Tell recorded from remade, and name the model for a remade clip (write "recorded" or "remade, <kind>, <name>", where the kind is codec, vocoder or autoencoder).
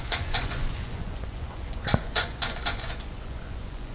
remade, vocoder, Vocos